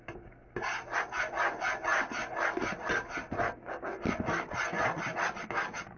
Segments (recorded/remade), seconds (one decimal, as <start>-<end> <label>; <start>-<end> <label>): 0.0-6.0 recorded